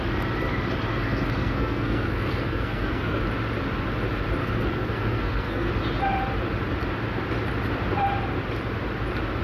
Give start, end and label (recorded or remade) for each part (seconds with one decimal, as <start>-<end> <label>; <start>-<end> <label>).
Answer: 0.0-0.9 recorded; 0.9-3.2 remade; 3.2-4.4 recorded; 4.4-5.7 remade; 5.7-9.4 recorded